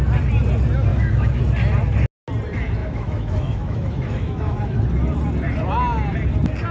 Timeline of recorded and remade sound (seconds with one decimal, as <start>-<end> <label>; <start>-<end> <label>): 0.0-0.9 recorded; 0.9-1.4 remade; 1.4-2.8 recorded; 2.8-4.8 remade; 4.8-6.7 recorded